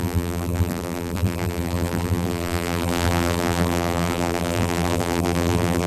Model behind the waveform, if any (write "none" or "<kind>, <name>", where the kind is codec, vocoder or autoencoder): vocoder, BigVGAN v2